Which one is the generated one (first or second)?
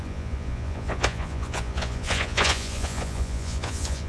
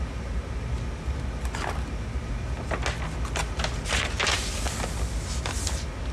first